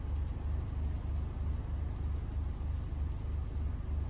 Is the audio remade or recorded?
recorded